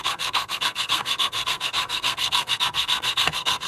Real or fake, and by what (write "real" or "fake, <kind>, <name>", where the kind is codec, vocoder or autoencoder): fake, codec, SNAC